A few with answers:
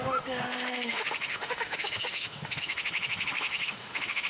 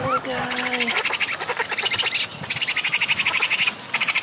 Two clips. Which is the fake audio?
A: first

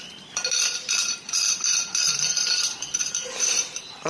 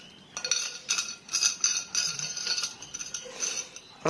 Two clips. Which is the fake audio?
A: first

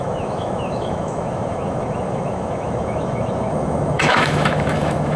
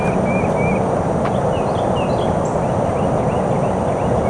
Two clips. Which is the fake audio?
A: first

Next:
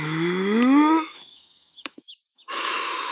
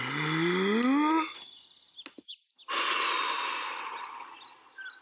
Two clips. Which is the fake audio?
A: first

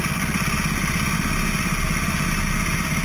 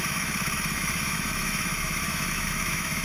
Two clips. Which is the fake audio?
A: second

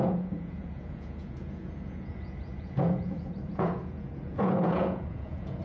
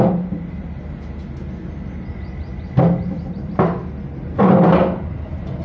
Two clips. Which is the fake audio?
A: first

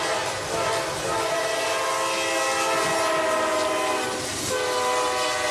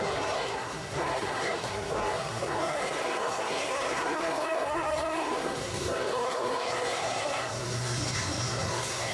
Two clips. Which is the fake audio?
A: second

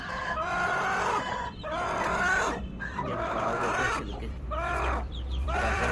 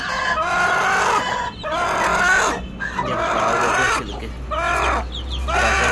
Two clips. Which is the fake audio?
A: first